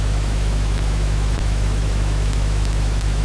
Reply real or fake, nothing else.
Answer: fake